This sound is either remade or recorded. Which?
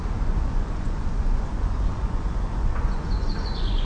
remade